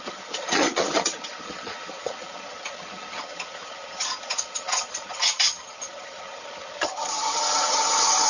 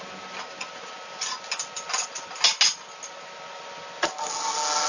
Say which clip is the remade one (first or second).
first